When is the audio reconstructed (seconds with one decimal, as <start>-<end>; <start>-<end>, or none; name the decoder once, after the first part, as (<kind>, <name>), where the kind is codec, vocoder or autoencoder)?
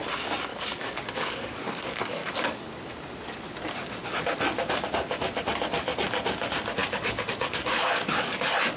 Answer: 0.5-2.9 (codec, DAC); 6.8-8.4